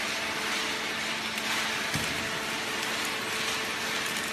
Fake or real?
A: real